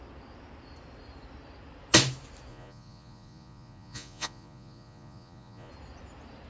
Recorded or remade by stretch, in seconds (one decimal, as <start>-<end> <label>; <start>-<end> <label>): 0.0-2.5 recorded; 2.5-5.7 remade; 5.7-6.5 recorded